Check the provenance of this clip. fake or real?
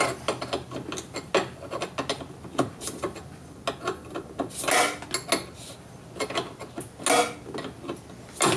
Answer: real